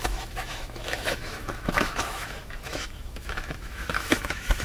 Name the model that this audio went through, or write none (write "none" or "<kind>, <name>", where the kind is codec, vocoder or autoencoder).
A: autoencoder, DAC-VAE